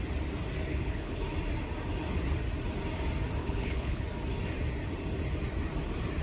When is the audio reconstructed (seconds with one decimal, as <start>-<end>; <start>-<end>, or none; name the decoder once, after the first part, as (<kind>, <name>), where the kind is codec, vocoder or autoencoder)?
0.7-1.2 (codec, HILCodec); 3.4-4.0